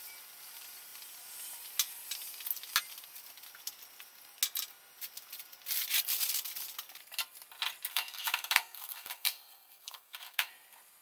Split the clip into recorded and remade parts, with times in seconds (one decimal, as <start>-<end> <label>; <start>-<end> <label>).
0.0-7.9 recorded; 7.9-10.5 remade; 10.5-11.0 recorded